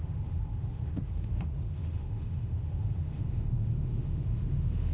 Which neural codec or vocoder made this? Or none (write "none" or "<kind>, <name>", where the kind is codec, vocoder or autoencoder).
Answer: autoencoder, DAC-VAE